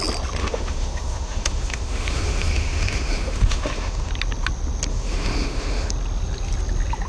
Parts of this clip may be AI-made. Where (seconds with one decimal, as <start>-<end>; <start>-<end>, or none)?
0.4-4.1; 4.9-5.9